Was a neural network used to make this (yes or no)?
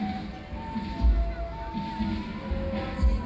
no